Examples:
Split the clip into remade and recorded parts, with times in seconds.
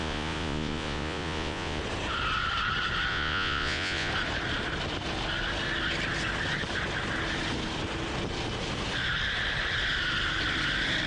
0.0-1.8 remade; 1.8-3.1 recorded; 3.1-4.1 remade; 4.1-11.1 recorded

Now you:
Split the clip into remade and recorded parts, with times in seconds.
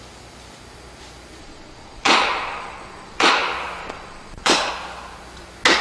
0.0-1.4 recorded; 1.4-3.3 remade; 3.3-3.8 recorded; 3.8-4.7 remade; 4.7-5.8 recorded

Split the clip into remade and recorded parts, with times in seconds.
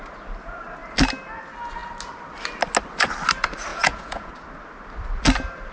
0.0-3.7 recorded; 3.7-4.3 remade; 4.3-5.7 recorded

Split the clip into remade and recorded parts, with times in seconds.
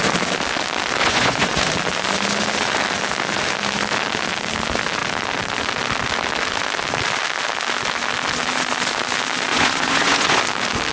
0.0-1.0 recorded; 1.0-1.7 remade; 1.7-9.5 recorded; 9.5-10.4 remade; 10.4-10.9 recorded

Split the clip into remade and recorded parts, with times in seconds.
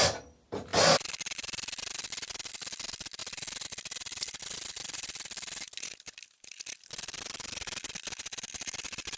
0.0-9.2 recorded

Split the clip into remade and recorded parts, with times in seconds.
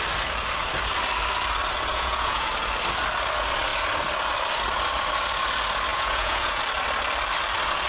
0.0-1.9 recorded; 1.9-2.5 remade; 2.5-5.9 recorded; 5.9-6.6 remade; 6.6-7.9 recorded